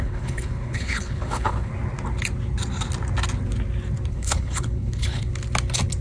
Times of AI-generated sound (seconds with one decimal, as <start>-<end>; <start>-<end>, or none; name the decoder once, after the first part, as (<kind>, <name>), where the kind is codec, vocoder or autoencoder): 0.0-1.7 (codec, HILCodec); 4.1-5.3